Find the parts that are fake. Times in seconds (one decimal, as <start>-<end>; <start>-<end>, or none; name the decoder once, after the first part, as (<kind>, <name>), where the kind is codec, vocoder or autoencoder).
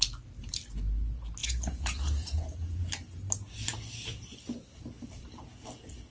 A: 1.4-2.8 (vocoder, Vocos)